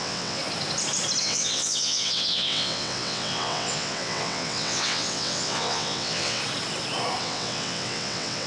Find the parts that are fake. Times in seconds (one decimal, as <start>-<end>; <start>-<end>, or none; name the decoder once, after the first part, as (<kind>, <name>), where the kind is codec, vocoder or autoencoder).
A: 0.0-0.4 (vocoder, WaveNeXt); 1.2-6.4; 7.2-8.5